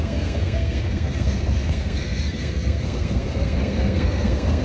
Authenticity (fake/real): fake